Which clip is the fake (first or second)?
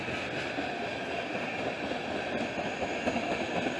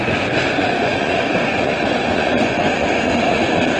second